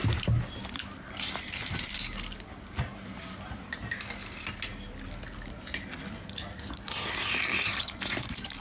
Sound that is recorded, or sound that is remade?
recorded